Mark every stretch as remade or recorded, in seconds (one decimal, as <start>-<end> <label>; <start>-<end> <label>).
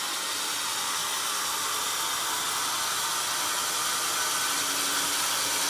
0.0-1.0 recorded; 1.0-2.6 remade; 2.6-5.7 recorded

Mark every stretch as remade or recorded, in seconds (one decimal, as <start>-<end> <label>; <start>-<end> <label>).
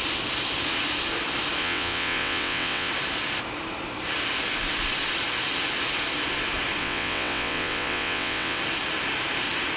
0.0-1.6 recorded; 1.6-2.9 remade; 2.9-6.8 recorded; 6.8-8.6 remade; 8.6-9.8 recorded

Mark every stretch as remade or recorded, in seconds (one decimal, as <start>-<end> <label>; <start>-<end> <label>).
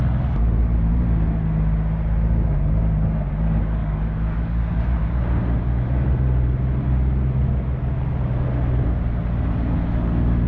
0.0-3.8 recorded; 3.8-4.8 remade; 4.8-10.5 recorded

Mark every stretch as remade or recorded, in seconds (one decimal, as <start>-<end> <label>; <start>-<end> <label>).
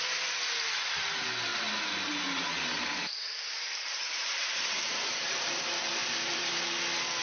0.0-1.5 recorded; 1.5-5.5 remade; 5.5-6.0 recorded; 6.0-6.5 remade; 6.5-7.2 recorded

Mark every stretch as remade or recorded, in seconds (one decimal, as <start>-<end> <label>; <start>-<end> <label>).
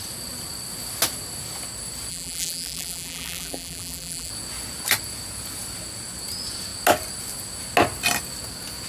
0.0-2.1 recorded; 2.1-4.3 remade; 4.3-8.9 recorded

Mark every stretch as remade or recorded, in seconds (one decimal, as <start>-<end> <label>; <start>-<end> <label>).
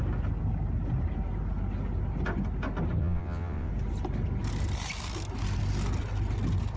0.0-3.0 recorded; 3.0-3.7 remade; 3.7-6.8 recorded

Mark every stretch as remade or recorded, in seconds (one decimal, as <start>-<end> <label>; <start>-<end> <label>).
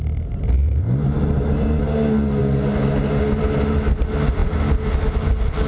0.0-5.7 recorded